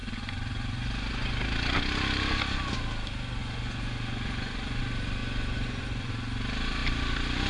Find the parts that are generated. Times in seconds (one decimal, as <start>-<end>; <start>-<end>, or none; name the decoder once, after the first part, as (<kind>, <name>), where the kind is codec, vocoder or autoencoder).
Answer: 0.0-1.4 (vocoder, Vocos); 3.4-4.8; 5.2-6.1